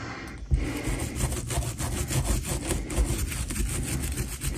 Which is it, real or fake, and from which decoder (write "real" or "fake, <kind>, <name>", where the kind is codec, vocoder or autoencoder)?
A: real